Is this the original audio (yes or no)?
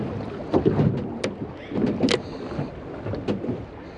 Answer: yes